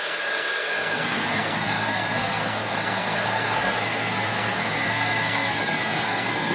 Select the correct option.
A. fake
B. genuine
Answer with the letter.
A